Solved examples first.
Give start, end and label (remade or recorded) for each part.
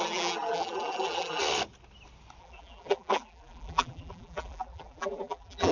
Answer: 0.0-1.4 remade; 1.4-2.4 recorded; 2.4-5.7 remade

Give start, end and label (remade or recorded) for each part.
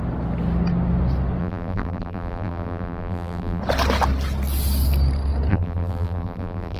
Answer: 0.0-1.4 recorded; 1.4-3.6 remade; 3.6-5.5 recorded; 5.5-6.8 remade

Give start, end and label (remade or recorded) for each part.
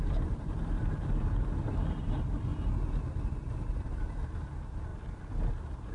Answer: 0.0-2.5 remade; 2.5-3.7 recorded; 3.7-4.9 remade; 4.9-5.5 recorded; 5.5-5.9 remade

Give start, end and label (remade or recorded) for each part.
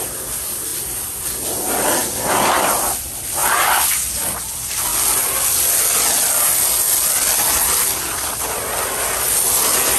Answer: 0.0-0.7 recorded; 0.7-1.2 remade; 1.2-2.0 recorded; 2.0-3.0 remade; 3.0-3.4 recorded; 3.4-4.1 remade; 4.1-10.0 recorded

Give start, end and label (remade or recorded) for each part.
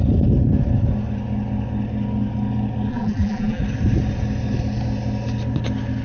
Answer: 0.0-2.9 recorded; 2.9-3.6 remade; 3.6-6.0 recorded